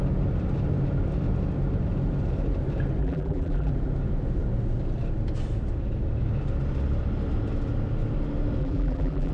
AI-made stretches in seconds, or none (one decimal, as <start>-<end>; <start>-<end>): 3.0-3.7; 8.6-9.3